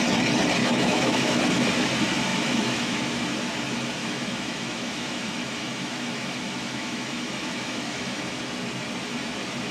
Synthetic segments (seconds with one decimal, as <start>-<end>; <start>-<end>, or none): 0.6-1.4; 2.3-3.0; 4.0-8.4